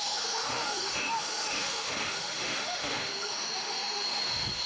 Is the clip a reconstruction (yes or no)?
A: yes